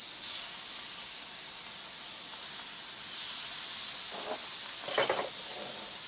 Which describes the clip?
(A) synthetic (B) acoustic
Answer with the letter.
B